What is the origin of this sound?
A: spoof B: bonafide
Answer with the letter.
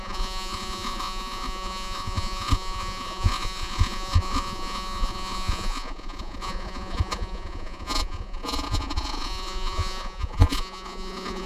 A